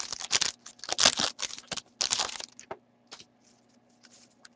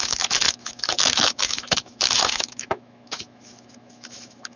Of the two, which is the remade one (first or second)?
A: second